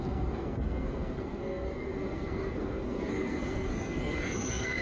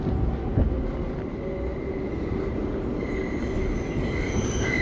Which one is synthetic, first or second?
first